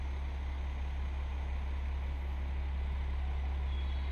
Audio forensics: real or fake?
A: real